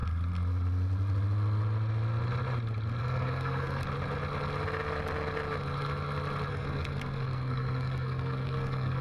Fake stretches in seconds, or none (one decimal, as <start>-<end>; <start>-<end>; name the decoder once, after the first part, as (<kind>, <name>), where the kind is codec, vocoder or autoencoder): 3.0-3.8 (codec, SNAC); 6.5-9.0